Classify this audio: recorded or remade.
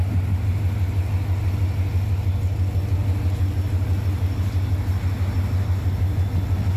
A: recorded